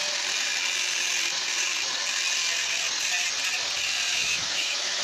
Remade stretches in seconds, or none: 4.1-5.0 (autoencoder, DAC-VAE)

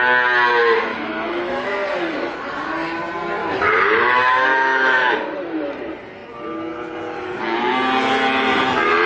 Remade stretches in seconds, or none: 0.9-1.7 (autoencoder, DAC-VAE); 3.4-5.1

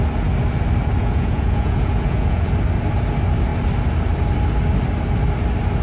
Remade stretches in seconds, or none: 1.0-2.5 (vocoder, Vocos)

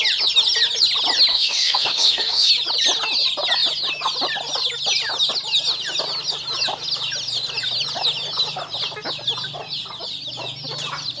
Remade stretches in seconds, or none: 1.3-2.5 (codec, DAC)